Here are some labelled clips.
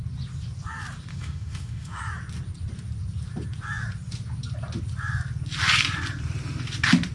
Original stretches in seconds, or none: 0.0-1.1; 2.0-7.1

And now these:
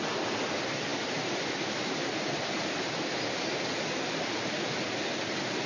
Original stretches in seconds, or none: 0.0-5.7